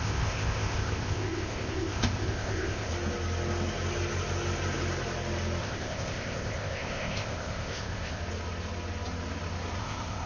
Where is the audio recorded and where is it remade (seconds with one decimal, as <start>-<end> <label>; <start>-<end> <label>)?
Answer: 0.0-2.9 remade; 2.9-5.6 recorded; 5.6-8.2 remade; 8.2-9.8 recorded; 9.8-10.3 remade